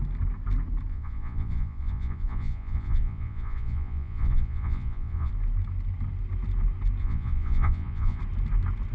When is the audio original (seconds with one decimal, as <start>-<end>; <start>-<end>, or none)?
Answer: 0.0-0.9; 5.3-7.0; 8.2-8.9